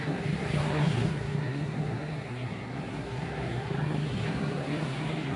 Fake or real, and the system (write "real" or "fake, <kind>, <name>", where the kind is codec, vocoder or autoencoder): fake, codec, SNAC